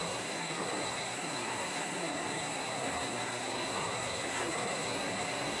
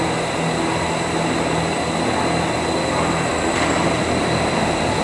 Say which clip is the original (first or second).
second